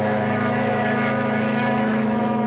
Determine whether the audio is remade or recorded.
remade